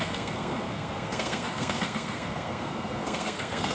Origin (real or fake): fake